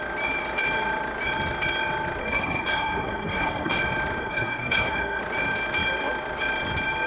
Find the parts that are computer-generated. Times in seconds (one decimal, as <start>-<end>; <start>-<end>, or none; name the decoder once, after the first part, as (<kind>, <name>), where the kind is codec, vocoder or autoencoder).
2.2-3.8 (codec, SNAC); 4.2-5.2